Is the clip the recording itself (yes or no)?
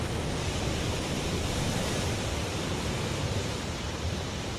yes